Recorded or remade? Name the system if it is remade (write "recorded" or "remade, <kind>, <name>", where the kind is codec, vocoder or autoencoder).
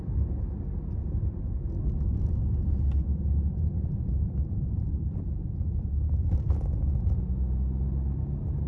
recorded